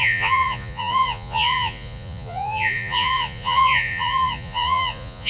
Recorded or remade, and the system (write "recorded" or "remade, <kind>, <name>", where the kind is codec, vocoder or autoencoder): remade, vocoder, Vocos